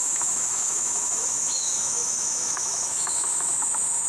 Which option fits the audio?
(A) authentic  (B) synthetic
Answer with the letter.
B